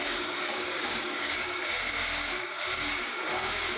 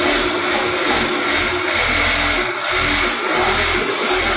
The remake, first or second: first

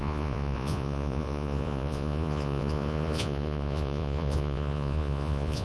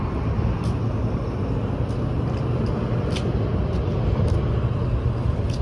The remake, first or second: first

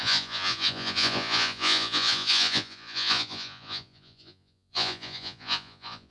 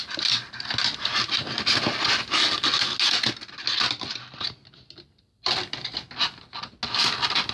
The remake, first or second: first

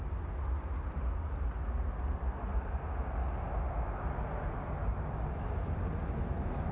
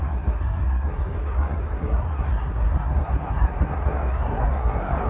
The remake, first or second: second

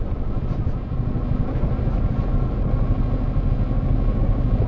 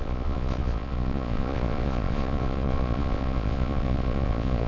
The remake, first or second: second